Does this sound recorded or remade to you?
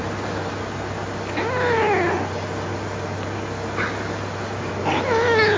recorded